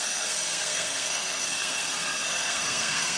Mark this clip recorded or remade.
remade